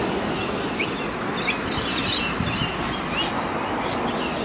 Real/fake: real